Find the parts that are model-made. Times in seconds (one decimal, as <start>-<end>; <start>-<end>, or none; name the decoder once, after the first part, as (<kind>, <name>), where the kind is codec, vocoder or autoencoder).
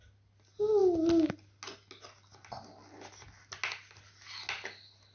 none